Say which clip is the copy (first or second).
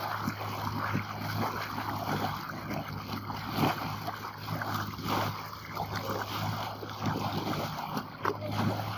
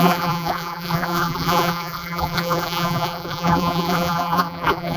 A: second